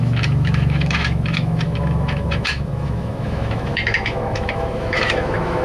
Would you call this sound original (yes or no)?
no